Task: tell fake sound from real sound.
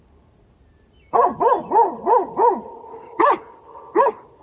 real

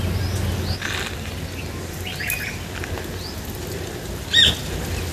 real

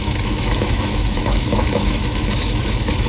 fake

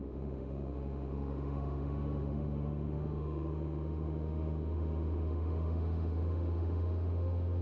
fake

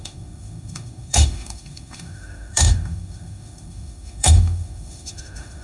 fake